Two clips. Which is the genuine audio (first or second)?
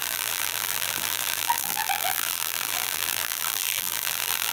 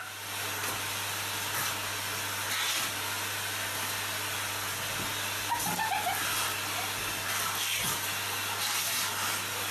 second